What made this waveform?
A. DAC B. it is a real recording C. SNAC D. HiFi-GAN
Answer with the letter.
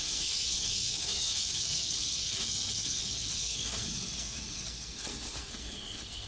C